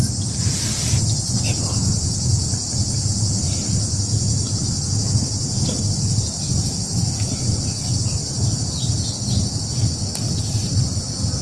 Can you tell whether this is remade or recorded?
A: recorded